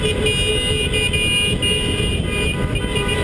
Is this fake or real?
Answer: real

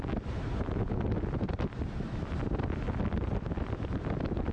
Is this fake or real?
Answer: real